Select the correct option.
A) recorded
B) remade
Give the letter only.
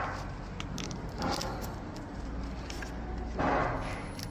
A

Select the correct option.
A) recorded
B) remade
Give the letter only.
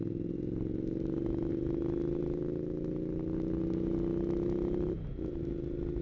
A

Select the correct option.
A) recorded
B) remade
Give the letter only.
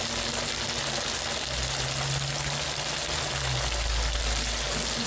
A